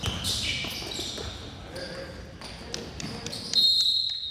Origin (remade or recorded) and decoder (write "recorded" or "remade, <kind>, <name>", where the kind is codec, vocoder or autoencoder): recorded